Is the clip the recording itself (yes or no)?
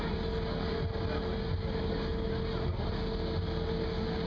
yes